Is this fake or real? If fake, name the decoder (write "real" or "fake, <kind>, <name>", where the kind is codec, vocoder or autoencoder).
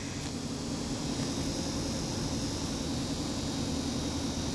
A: real